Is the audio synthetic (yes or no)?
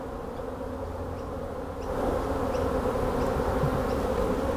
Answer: no